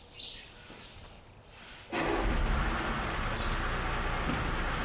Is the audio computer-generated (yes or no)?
no